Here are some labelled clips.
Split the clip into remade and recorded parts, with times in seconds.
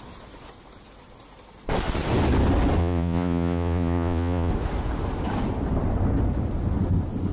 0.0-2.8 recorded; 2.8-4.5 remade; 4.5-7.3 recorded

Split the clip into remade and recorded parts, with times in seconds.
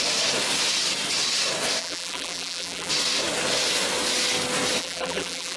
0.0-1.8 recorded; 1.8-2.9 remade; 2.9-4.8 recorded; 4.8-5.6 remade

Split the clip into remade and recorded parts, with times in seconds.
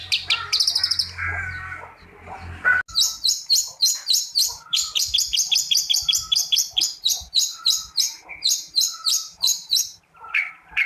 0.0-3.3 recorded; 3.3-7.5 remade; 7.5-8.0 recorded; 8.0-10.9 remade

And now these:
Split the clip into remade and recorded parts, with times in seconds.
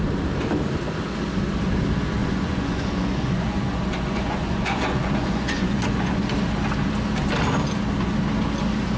0.0-2.2 recorded; 2.2-6.3 remade; 6.3-9.0 recorded